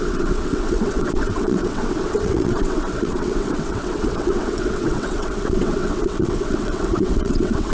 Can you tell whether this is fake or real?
fake